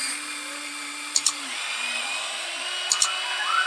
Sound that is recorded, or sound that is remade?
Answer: recorded